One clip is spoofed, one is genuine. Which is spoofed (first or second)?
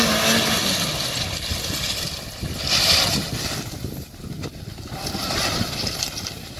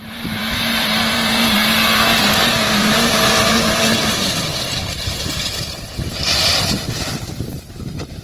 second